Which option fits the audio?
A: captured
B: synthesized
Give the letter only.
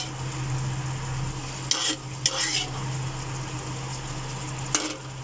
A